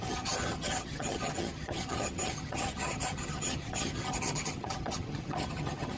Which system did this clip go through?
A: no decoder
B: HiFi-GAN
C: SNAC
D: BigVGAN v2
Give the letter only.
B